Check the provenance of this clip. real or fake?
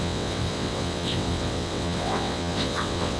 fake